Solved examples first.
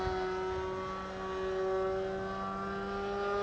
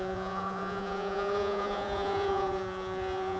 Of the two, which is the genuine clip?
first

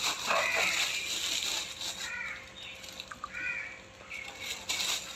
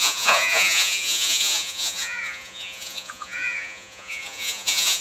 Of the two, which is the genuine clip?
first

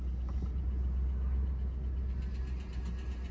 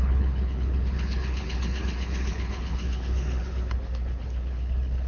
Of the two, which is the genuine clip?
first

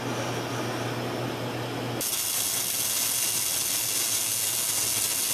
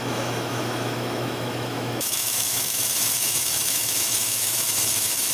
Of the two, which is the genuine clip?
first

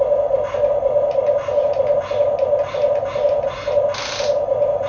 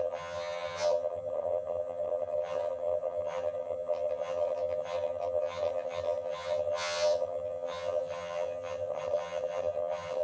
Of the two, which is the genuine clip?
first